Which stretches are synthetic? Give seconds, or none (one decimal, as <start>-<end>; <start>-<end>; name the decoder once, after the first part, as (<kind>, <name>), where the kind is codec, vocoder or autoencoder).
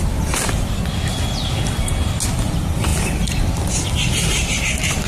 none